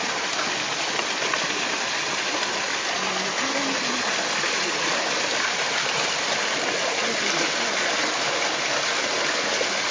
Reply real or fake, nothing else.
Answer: real